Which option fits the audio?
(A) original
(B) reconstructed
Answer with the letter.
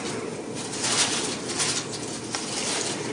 A